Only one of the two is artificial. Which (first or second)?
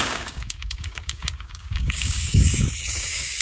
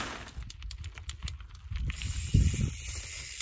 first